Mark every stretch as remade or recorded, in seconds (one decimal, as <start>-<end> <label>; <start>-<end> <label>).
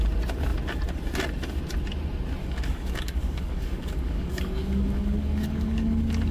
0.0-2.4 recorded; 2.4-6.3 remade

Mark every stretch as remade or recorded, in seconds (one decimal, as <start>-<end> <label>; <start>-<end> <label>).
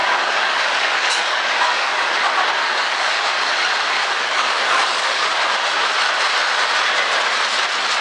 0.0-2.2 remade; 2.2-2.6 recorded; 2.6-3.4 remade; 3.4-4.0 recorded; 4.0-5.3 remade; 5.3-8.0 recorded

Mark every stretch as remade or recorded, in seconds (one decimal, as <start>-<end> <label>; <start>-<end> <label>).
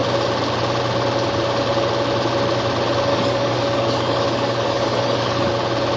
0.0-3.1 recorded; 3.1-5.5 remade; 5.5-6.0 recorded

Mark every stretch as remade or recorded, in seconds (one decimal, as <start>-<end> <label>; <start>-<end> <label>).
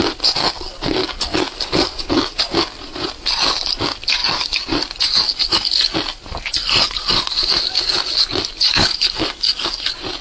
0.0-1.0 recorded; 1.0-2.4 remade; 2.4-8.7 recorded; 8.7-9.7 remade; 9.7-10.2 recorded